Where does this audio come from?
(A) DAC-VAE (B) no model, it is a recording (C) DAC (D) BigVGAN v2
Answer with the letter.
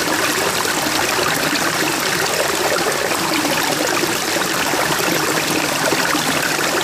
B